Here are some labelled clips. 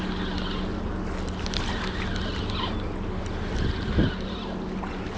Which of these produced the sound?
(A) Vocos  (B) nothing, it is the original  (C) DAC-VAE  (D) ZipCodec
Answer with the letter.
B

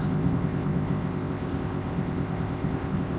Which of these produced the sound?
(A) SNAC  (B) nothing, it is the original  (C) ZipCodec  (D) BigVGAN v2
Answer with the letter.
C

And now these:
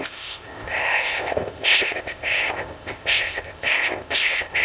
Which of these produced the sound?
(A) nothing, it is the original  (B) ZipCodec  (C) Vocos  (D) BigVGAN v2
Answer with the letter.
B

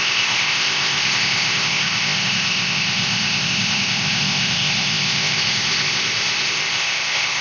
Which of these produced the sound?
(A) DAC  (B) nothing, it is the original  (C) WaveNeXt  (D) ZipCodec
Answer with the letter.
D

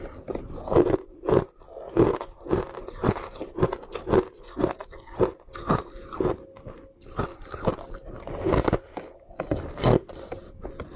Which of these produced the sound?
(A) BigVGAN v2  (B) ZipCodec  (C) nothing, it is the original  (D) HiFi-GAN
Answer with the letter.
C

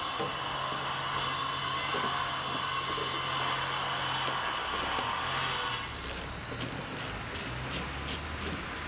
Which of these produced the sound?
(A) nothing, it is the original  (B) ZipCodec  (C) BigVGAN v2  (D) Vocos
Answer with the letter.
A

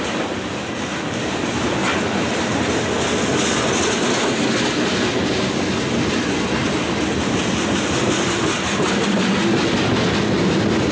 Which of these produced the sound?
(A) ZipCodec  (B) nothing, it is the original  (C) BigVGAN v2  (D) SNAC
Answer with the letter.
B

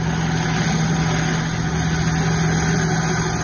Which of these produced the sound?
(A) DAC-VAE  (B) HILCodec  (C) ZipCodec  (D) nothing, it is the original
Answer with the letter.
D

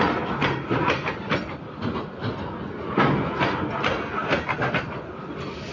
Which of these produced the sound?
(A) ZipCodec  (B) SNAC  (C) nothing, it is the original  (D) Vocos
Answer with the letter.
C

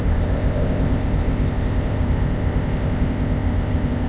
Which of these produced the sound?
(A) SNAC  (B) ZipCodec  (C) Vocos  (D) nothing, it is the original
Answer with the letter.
B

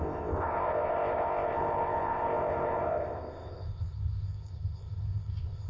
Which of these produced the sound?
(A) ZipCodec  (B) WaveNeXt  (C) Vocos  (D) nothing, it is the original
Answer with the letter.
A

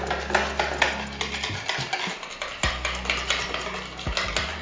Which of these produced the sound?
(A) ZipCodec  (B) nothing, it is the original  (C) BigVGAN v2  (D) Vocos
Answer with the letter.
B